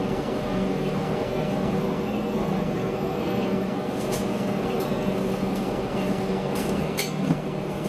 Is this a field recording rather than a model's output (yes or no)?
no